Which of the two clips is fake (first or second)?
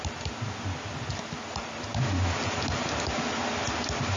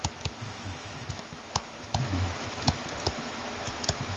second